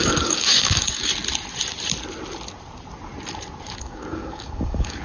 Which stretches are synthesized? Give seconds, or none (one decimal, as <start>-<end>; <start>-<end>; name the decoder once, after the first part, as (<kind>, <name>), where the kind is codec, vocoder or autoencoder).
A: 0.0-1.1 (codec, DAC); 3.8-5.0